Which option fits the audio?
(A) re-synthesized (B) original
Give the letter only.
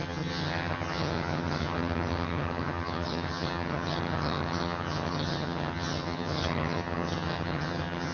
A